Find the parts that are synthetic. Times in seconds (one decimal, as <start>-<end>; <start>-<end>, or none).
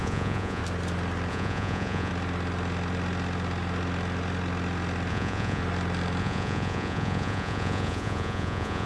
0.0-0.6; 1.3-2.1; 5.1-5.6; 6.2-8.9